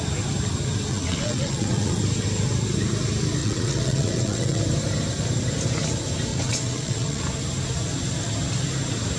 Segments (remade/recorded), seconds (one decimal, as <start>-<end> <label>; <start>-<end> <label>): 0.0-0.9 recorded; 0.9-2.0 remade; 2.0-3.4 recorded; 3.4-4.6 remade; 4.6-6.3 recorded; 6.3-7.2 remade; 7.2-9.2 recorded